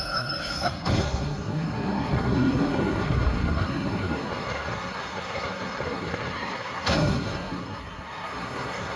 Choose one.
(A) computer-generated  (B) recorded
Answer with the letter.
A